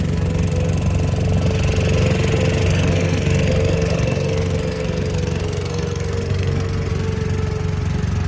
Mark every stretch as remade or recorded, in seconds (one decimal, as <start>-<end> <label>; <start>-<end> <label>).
0.0-2.6 recorded; 2.6-6.9 remade; 6.9-8.3 recorded